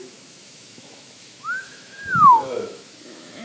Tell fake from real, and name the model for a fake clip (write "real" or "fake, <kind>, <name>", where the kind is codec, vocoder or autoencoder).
fake, autoencoder, DAC-VAE